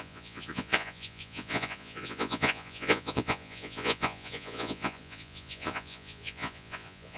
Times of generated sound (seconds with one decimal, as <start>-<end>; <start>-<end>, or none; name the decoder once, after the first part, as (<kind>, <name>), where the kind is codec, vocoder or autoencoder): 0.0-7.2 (vocoder, Vocos)